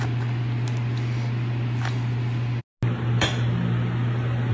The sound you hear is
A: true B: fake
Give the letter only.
A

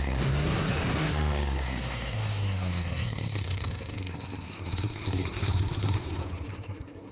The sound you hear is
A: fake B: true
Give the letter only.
A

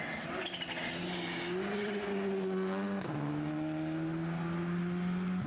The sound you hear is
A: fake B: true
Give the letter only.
B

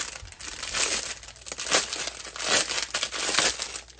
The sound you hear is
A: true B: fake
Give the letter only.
A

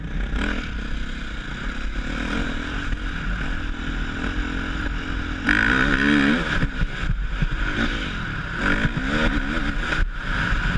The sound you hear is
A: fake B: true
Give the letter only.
B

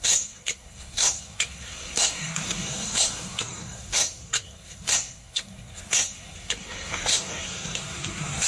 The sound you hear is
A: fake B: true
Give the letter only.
A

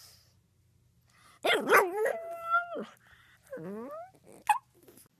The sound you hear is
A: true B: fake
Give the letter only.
A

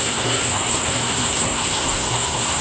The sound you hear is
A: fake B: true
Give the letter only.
A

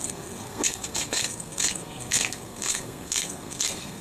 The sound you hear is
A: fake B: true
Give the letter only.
A